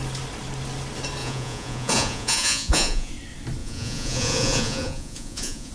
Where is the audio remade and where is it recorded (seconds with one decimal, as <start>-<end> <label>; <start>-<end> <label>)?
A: 0.0-1.2 recorded; 1.2-3.1 remade; 3.1-3.6 recorded; 3.6-5.7 remade